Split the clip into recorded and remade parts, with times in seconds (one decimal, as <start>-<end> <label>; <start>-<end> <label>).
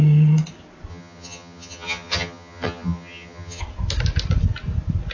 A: 0.0-0.9 recorded; 0.9-3.6 remade; 3.6-5.1 recorded